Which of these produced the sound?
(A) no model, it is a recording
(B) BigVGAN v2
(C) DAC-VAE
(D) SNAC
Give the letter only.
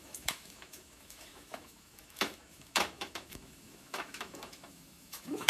C